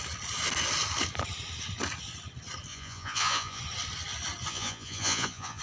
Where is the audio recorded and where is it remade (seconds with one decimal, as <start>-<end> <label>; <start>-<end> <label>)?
0.0-2.7 recorded; 2.7-3.6 remade; 3.6-4.5 recorded; 4.5-5.6 remade